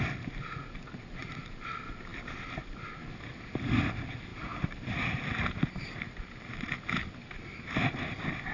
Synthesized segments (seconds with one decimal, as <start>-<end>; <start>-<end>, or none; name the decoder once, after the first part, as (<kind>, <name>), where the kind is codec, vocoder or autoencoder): 1.2-1.7 (vocoder, BigVGAN v2); 4.3-7.8